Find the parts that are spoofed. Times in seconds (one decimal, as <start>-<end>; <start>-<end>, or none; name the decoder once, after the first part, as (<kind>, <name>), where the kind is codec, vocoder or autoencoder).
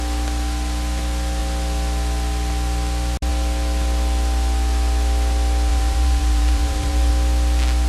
5.7-7.1 (vocoder, BigVGAN v2)